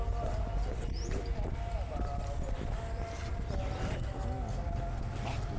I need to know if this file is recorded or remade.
recorded